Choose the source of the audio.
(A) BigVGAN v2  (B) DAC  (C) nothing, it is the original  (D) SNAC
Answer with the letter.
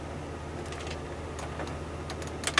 C